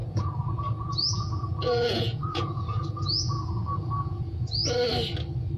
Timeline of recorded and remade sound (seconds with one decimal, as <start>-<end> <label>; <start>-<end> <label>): 0.0-4.6 remade; 4.6-5.6 recorded